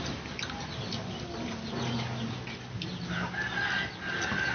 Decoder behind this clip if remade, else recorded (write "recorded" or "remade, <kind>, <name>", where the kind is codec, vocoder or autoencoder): recorded